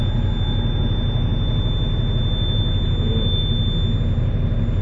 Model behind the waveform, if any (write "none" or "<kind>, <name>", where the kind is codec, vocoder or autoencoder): none